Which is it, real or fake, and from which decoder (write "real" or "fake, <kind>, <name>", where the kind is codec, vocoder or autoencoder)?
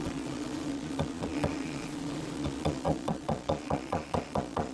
fake, vocoder, Vocos